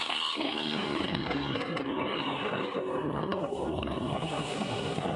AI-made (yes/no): yes